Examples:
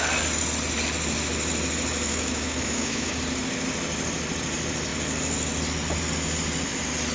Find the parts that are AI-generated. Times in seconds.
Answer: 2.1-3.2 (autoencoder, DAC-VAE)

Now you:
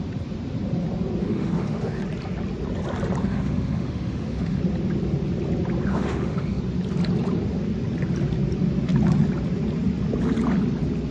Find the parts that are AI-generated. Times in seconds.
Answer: 1.2-2.0 (autoencoder, DAC-VAE); 3.2-4.6; 5.9-6.6

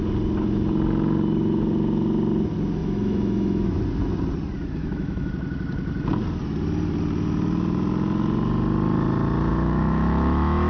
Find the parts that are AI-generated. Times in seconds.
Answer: 2.8-3.7 (autoencoder, DAC-VAE); 4.8-5.3; 9.5-10.7